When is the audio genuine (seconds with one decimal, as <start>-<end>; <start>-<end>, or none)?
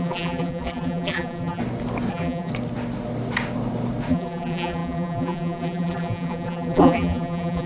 1.6-2.1; 2.5-4.1